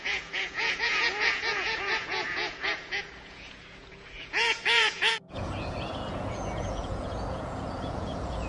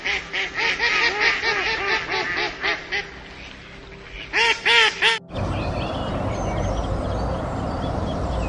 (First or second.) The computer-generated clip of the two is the first